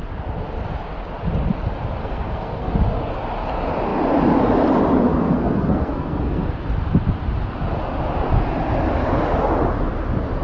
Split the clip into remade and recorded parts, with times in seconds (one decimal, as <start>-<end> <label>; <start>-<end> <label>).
0.0-2.0 recorded; 2.0-2.7 remade; 2.7-5.2 recorded; 5.2-6.6 remade; 6.6-10.4 recorded

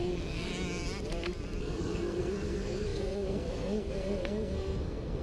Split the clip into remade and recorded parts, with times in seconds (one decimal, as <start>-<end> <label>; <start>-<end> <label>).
0.0-0.5 remade; 0.5-1.6 recorded; 1.6-5.2 remade

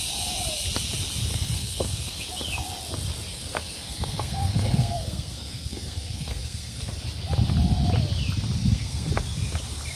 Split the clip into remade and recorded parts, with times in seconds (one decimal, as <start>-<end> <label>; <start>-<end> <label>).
0.0-1.3 recorded; 1.3-2.2 remade; 2.2-3.3 recorded; 3.3-6.9 remade; 6.9-8.6 recorded; 8.6-9.1 remade; 9.1-10.0 recorded

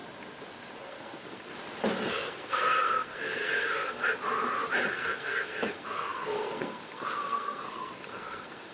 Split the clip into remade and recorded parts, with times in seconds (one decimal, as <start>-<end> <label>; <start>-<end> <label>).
0.0-0.8 recorded; 0.8-1.5 remade; 1.5-2.1 recorded; 2.1-4.0 remade; 4.0-4.9 recorded; 4.9-8.7 remade

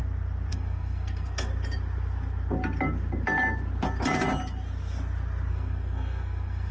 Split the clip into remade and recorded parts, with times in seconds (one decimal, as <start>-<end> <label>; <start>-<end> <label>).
0.0-0.5 recorded; 0.5-1.5 remade; 1.5-5.5 recorded; 5.5-6.7 remade